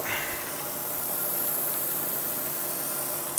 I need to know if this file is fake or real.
fake